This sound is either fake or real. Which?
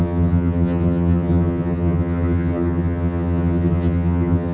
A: fake